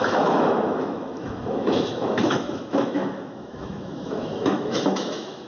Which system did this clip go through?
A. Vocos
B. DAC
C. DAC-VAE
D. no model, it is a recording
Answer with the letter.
C